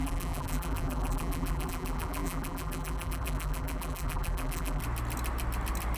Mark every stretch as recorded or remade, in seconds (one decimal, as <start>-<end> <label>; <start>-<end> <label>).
0.0-4.8 remade; 4.8-6.0 recorded